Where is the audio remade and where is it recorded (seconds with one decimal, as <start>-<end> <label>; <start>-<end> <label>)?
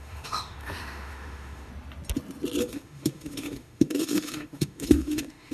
0.0-1.7 remade; 1.7-2.6 recorded; 2.6-5.5 remade